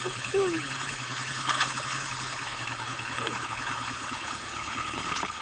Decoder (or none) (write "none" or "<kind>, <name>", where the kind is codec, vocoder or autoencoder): codec, HILCodec